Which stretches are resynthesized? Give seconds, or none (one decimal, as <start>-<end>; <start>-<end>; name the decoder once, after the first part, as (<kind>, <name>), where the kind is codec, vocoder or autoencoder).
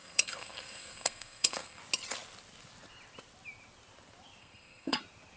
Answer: 0.0-1.8 (codec, SNAC); 4.4-5.0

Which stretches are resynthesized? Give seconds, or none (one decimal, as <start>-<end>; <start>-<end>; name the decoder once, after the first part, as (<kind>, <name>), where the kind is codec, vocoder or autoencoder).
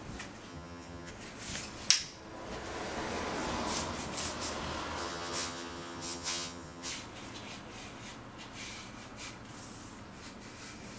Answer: 0.5-1.1 (vocoder, HiFi-GAN); 5.0-6.9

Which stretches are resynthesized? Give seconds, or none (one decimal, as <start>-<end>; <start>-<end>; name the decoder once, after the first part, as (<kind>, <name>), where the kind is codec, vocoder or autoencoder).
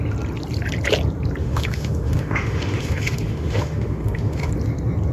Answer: 1.4-4.5 (autoencoder, DAC-VAE)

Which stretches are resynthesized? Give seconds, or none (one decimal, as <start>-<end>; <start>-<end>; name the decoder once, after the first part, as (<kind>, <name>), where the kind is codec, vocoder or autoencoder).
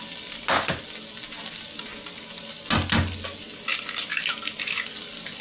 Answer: none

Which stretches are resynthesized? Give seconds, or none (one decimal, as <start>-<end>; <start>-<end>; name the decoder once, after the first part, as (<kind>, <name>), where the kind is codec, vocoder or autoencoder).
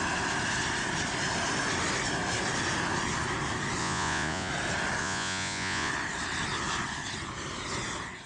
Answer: 3.8-4.5 (vocoder, Vocos); 5.0-5.9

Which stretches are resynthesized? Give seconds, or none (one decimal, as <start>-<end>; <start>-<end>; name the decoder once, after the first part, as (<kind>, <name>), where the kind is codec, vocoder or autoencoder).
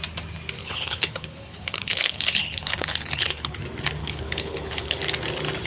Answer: 0.6-3.6 (codec, HILCodec); 4.0-5.0